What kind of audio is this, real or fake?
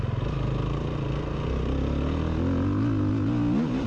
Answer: real